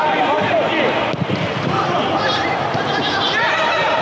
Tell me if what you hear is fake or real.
real